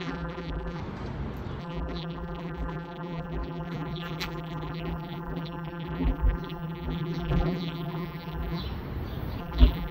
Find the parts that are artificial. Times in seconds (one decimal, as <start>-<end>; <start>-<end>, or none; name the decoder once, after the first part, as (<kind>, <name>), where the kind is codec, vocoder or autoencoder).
0.0-0.8 (vocoder, BigVGAN v2); 1.6-8.6; 9.4-9.9